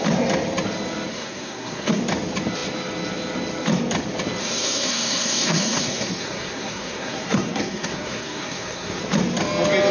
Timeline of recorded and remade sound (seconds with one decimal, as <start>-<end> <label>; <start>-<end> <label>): 0.0-1.1 recorded; 1.1-2.0 remade; 2.0-4.4 recorded; 4.4-9.0 remade; 9.0-9.9 recorded